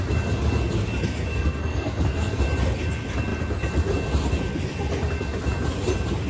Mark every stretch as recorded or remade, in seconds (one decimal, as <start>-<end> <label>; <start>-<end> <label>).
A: 0.0-1.3 recorded; 1.3-2.4 remade; 2.4-6.3 recorded